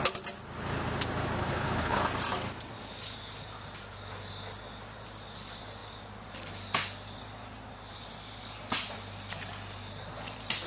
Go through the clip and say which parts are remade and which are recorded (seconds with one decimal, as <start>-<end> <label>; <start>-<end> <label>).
0.0-1.4 recorded; 1.4-2.0 remade; 2.0-10.7 recorded